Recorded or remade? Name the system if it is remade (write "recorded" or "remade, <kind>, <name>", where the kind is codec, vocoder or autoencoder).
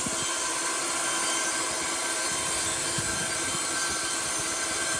remade, vocoder, BigVGAN v2